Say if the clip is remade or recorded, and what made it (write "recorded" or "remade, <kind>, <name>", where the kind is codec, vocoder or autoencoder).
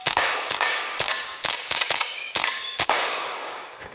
remade, codec, DAC